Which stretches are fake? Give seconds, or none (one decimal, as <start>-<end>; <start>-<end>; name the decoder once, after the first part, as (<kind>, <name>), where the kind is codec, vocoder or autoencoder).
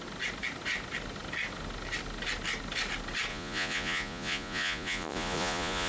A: 3.3-5.9 (vocoder, Vocos)